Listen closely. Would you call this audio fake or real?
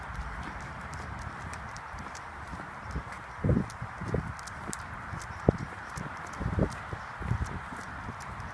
fake